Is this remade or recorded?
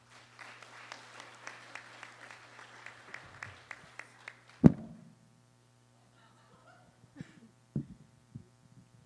recorded